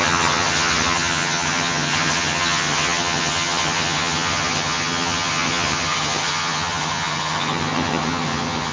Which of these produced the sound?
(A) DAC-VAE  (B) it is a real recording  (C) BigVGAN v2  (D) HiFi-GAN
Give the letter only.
D